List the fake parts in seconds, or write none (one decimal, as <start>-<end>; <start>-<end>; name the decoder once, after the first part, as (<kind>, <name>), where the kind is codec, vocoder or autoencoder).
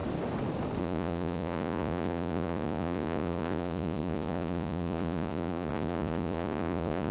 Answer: 0.8-7.1 (vocoder, Vocos)